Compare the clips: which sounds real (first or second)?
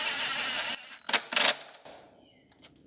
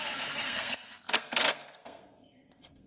first